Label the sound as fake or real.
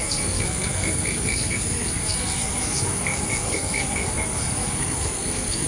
fake